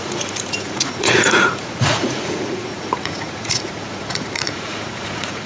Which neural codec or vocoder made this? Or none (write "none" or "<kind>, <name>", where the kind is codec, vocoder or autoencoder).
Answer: vocoder, Vocos